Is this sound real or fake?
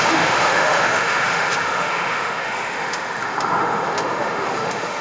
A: fake